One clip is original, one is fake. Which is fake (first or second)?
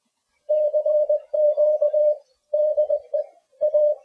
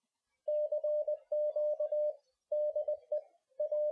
first